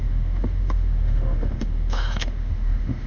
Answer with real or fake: fake